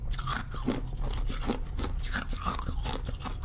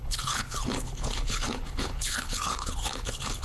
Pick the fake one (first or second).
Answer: second